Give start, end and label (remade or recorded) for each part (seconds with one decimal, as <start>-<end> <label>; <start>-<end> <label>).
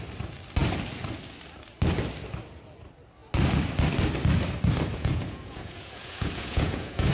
0.0-4.9 recorded; 4.9-7.1 remade